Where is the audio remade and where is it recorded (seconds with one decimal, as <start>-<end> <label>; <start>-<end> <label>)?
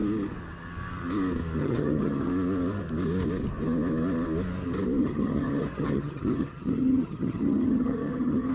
0.0-1.6 recorded; 1.6-2.3 remade; 2.3-5.0 recorded; 5.0-8.5 remade